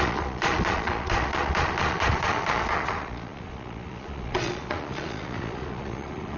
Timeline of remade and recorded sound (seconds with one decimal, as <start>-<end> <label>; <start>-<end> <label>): 0.0-6.4 remade